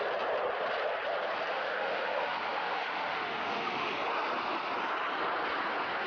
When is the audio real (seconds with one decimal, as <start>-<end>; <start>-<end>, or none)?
0.0-1.5; 3.9-6.1

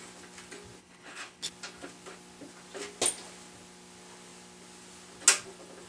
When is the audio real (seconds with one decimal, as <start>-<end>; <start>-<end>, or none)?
0.0-0.8; 1.5-5.9

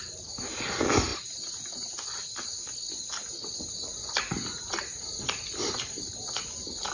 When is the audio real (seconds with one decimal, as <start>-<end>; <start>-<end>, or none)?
0.0-6.9

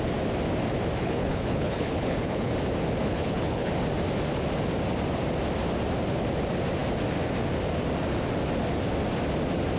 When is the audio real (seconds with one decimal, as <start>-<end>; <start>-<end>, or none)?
0.0-1.0; 2.5-3.0; 3.7-9.8

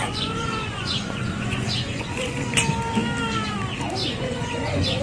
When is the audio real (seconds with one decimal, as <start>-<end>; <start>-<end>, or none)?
2.3-4.0

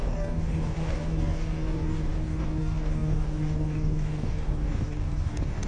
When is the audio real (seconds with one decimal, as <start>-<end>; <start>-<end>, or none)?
none